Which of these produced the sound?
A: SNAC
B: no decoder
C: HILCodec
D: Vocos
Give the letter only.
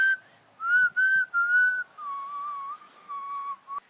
B